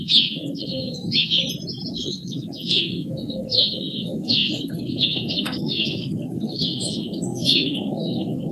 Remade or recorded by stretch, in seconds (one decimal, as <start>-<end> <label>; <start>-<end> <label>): 0.0-1.4 remade; 1.4-1.9 recorded; 1.9-8.5 remade